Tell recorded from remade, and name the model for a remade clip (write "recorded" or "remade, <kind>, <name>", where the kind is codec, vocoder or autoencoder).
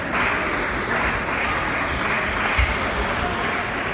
recorded